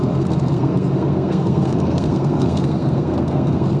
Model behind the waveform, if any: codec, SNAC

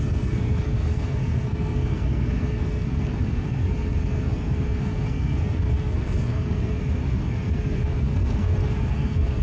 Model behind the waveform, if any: codec, SNAC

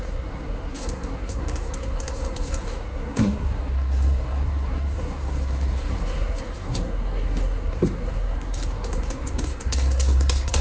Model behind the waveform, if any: codec, SNAC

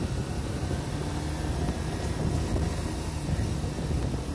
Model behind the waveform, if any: none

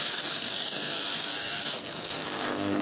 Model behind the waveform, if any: codec, SNAC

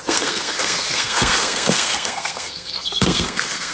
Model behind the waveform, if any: codec, SNAC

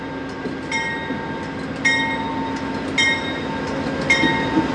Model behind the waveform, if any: none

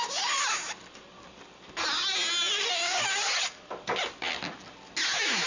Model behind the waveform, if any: none